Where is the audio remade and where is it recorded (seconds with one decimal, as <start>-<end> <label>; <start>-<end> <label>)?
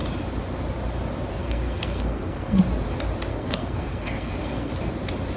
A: 0.0-1.4 recorded; 1.4-2.6 remade; 2.6-3.3 recorded; 3.3-4.7 remade; 4.7-5.4 recorded